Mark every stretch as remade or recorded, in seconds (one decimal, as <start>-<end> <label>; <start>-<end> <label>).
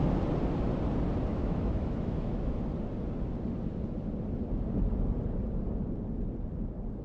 0.0-1.3 recorded; 1.3-2.6 remade; 2.6-7.0 recorded